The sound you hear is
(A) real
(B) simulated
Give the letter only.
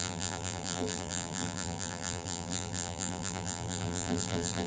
B